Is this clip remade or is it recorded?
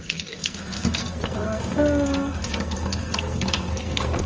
remade